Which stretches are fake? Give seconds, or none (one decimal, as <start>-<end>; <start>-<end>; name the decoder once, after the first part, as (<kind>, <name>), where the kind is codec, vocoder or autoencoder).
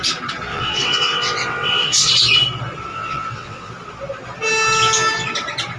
0.5-2.1 (vocoder, WaveNeXt); 2.9-3.7